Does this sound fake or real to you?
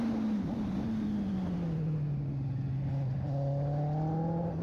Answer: real